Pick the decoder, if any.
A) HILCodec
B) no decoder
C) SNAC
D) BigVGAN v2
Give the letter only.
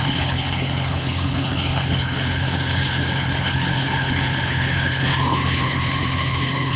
A